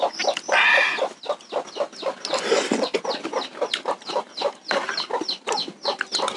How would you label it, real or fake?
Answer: real